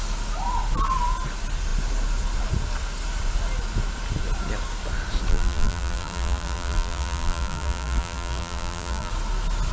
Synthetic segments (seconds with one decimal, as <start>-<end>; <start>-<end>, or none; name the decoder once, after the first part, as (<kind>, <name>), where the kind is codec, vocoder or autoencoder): 5.3-9.1 (vocoder, BigVGAN v2)